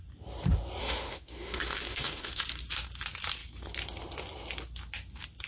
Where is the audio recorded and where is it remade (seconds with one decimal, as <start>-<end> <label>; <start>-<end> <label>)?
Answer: 0.0-0.8 recorded; 0.8-2.4 remade; 2.4-5.5 recorded